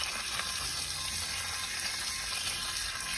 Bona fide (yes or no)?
yes